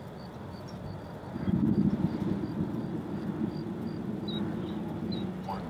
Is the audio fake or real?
real